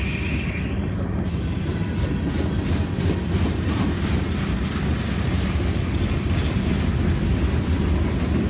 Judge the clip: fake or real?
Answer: real